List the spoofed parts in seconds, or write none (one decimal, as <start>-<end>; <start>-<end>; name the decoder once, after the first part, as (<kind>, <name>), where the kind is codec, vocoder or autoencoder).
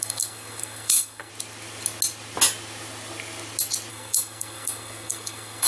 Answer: 0.0-1.3 (codec, SNAC); 3.9-5.7